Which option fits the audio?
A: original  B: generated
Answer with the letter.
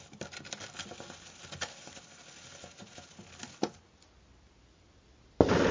A